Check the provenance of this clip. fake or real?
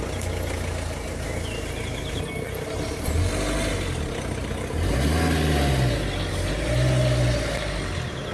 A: real